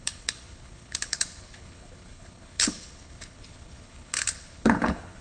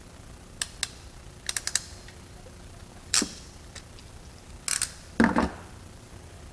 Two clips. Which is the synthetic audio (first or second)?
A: first